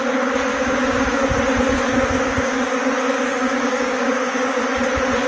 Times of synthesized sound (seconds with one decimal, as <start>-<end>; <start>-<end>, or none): 0.5-1.2; 1.9-2.7; 3.3-4.6